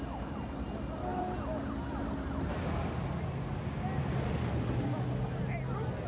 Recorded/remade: recorded